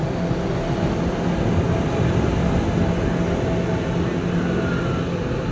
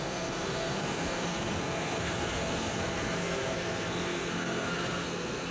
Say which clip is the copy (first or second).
second